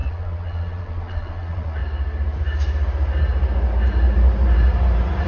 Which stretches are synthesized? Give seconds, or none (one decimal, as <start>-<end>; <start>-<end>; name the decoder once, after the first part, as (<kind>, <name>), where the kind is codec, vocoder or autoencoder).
0.0-1.8 (vocoder, Vocos)